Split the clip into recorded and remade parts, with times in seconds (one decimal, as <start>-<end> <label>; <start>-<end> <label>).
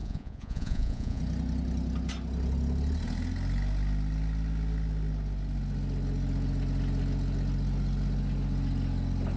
0.0-1.2 remade; 1.2-9.4 recorded